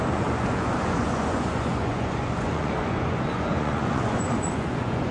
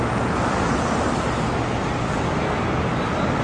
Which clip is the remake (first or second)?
first